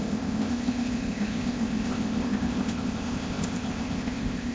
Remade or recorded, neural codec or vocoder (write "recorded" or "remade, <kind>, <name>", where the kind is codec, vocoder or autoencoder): remade, codec, ZipCodec